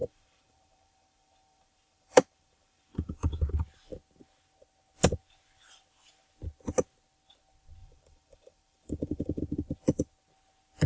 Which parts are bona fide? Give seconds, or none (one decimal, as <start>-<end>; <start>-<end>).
3.5-7.8; 9.4-10.9